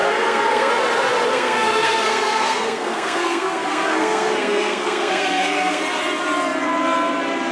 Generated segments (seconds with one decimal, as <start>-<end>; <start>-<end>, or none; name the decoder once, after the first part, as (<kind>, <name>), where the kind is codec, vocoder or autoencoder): 0.0-0.7 (codec, SNAC); 1.3-5.8